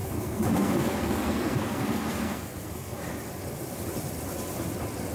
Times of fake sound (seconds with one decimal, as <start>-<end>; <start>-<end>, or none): 0.0-3.1